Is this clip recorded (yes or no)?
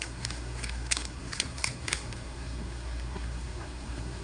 no